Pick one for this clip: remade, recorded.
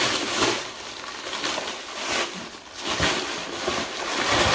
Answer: recorded